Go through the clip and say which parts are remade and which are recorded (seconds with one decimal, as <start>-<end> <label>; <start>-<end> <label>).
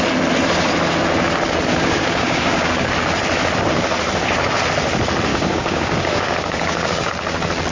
0.0-1.7 recorded; 1.7-2.9 remade; 2.9-5.3 recorded; 5.3-7.1 remade; 7.1-7.7 recorded